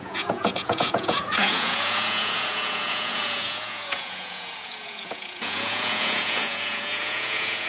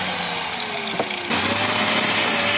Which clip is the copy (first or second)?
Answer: first